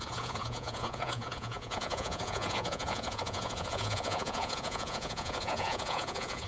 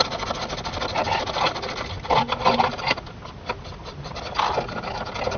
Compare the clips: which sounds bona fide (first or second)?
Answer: second